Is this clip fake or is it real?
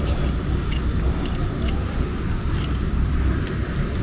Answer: real